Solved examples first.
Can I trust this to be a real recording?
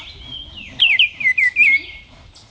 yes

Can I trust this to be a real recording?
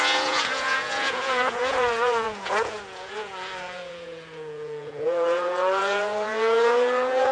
no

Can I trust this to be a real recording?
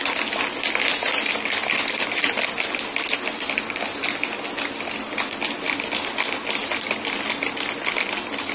yes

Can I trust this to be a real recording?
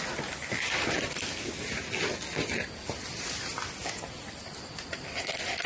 yes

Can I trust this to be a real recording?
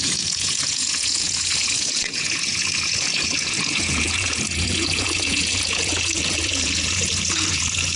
no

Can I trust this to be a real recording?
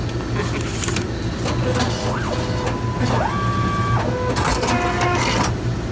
yes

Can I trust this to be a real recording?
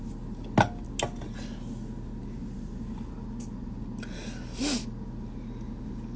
yes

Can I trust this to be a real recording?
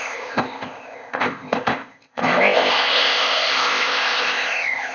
no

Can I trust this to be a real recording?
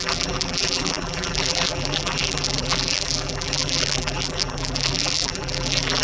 no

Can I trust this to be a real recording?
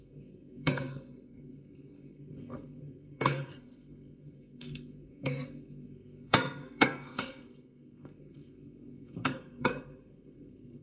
no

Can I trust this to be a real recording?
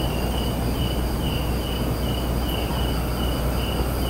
yes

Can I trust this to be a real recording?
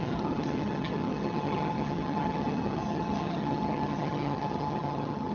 no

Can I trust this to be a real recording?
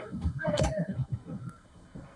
no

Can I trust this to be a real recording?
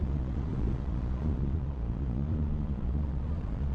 no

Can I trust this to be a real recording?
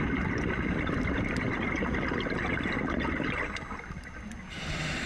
yes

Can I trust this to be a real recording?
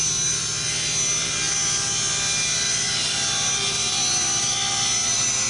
yes